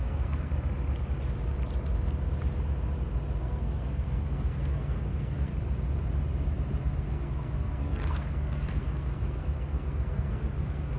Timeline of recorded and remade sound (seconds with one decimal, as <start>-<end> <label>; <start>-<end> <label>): 0.0-0.5 remade; 0.5-3.4 recorded; 3.4-5.5 remade; 5.5-7.0 recorded; 7.0-11.0 remade